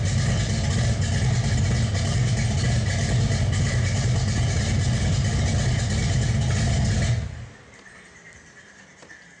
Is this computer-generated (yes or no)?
no